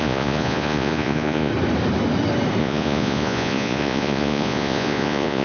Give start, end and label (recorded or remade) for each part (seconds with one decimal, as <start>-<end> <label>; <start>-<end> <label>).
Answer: 0.0-1.5 remade; 1.5-2.6 recorded; 2.6-5.4 remade